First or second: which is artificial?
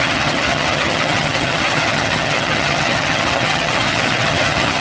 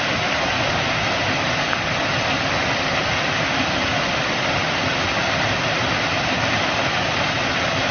first